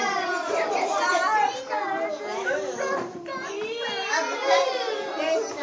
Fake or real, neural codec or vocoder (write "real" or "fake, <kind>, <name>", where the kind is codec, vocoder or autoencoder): real